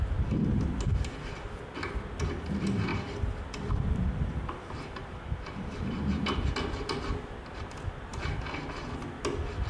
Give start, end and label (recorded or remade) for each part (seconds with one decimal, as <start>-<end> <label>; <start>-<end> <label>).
0.0-2.9 recorded; 2.9-6.5 remade; 6.5-9.7 recorded